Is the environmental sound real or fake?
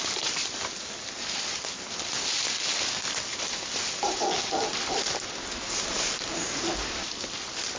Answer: real